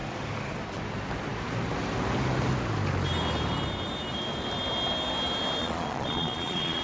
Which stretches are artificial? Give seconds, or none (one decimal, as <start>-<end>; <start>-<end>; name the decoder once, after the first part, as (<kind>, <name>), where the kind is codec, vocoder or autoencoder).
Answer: 5.6-6.8 (vocoder, Vocos)